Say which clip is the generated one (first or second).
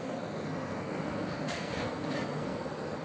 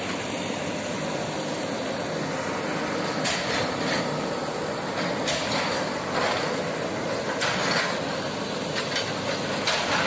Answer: first